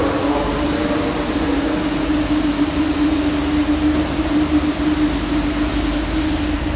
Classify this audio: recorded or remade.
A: recorded